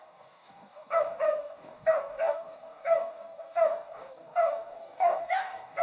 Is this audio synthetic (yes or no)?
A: yes